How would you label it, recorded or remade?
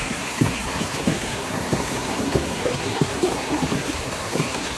remade